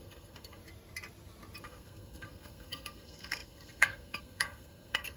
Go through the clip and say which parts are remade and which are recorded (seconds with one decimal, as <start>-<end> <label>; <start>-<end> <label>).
0.0-0.6 remade; 0.6-1.6 recorded; 1.6-5.2 remade